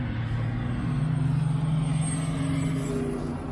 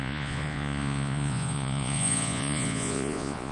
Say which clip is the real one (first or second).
first